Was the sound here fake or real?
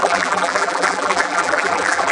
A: fake